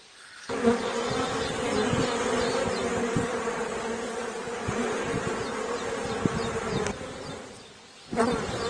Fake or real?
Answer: real